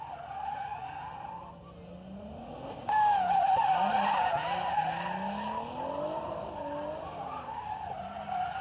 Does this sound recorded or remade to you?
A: recorded